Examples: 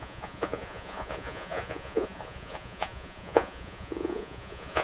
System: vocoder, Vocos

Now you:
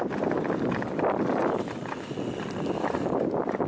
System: none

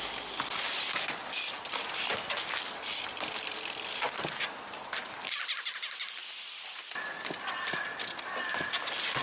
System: none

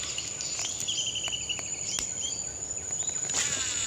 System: none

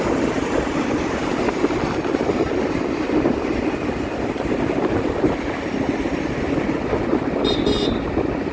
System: none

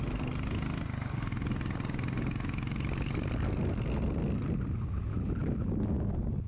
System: none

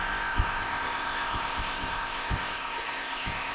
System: codec, ZipCodec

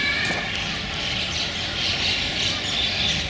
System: none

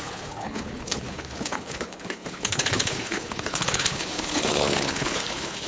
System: codec, HILCodec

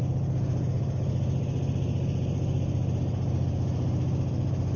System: none